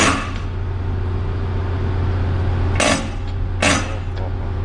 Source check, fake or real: real